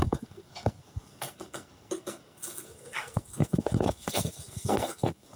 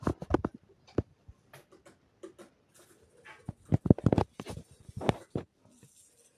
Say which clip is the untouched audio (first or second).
second